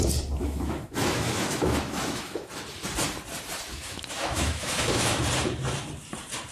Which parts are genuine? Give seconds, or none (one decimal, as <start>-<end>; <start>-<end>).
0.0-0.4; 2.5-3.7; 5.2-6.5